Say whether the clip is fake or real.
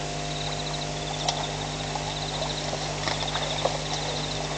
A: real